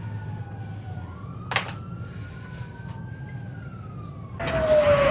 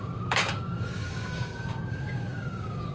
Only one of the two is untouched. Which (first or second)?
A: first